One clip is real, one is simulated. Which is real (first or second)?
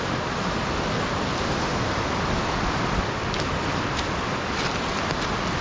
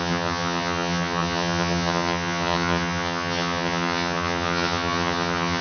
first